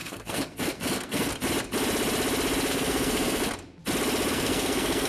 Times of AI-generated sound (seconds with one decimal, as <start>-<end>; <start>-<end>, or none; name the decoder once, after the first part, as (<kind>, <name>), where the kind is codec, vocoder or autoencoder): 0.0-1.3 (codec, SNAC); 2.7-3.4; 4.3-5.1